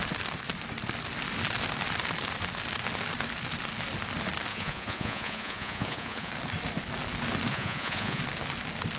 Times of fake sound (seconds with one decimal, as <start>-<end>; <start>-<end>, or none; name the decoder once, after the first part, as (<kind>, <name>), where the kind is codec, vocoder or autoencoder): 4.5-6.3 (vocoder, Vocos); 7.5-8.2